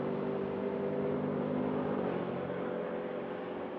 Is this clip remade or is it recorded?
remade